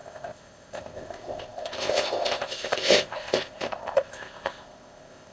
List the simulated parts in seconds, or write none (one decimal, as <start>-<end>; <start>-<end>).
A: 0.0-5.3